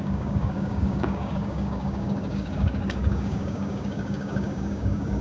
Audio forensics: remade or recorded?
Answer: remade